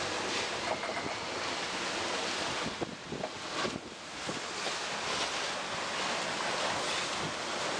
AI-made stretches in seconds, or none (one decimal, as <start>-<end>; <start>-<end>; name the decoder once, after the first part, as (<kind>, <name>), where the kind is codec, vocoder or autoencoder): none